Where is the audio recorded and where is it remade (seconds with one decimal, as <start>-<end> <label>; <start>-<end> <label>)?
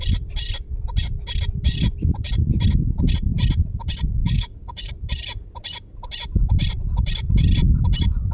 0.0-4.2 recorded; 4.2-4.9 remade; 4.9-8.3 recorded